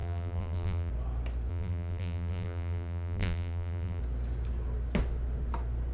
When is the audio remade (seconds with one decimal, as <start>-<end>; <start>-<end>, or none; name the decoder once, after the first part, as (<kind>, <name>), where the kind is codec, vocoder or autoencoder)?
0.0-0.9 (vocoder, BigVGAN v2); 1.5-4.0